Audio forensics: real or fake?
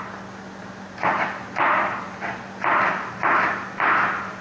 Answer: real